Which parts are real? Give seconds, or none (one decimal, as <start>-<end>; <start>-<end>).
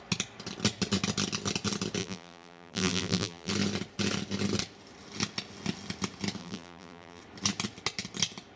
0.0-2.0; 3.5-6.4; 7.2-8.6